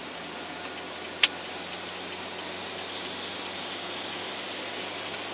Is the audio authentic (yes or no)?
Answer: yes